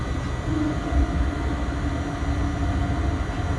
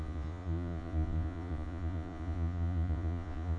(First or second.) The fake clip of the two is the second